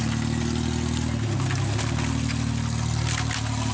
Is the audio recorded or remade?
recorded